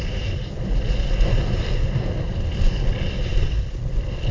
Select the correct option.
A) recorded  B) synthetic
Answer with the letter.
A